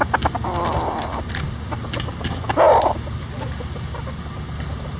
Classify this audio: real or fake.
real